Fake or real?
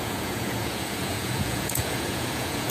fake